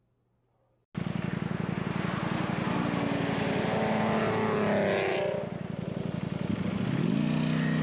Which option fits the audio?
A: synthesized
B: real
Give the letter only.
B